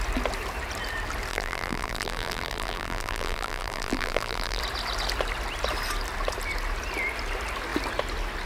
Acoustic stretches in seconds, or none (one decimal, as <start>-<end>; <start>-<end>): 0.0-1.3; 4.6-8.5